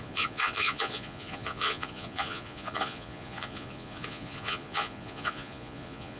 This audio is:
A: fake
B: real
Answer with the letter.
A